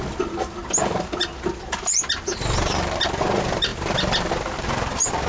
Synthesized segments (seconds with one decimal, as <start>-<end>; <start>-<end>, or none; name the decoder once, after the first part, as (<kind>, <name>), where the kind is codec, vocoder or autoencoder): none